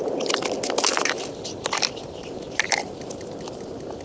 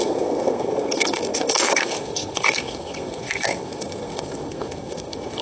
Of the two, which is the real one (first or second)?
first